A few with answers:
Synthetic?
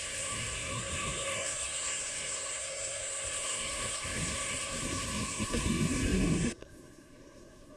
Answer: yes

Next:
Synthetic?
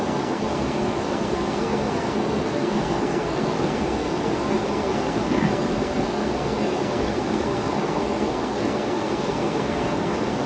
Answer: yes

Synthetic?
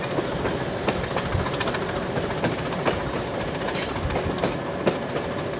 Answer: no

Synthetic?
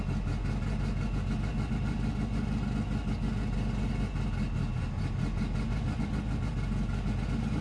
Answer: no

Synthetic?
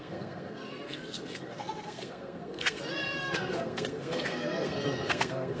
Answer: yes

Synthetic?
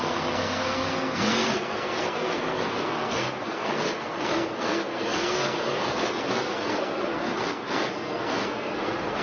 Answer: yes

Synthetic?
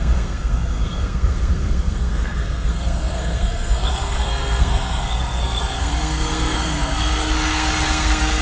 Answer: yes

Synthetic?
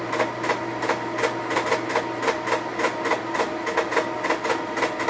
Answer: no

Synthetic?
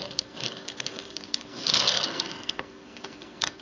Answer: yes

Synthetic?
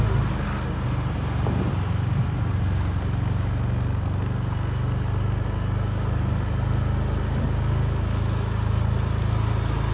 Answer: no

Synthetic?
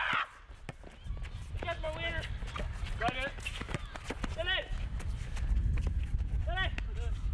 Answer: no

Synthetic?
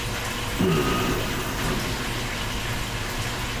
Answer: no